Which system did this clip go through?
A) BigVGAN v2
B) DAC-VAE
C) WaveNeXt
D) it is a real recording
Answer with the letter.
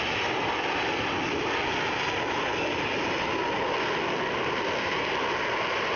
D